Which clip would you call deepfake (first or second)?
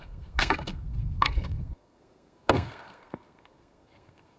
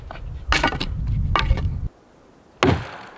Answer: first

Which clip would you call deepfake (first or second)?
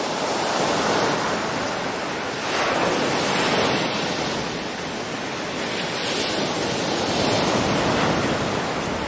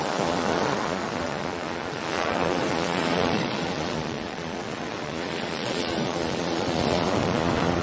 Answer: second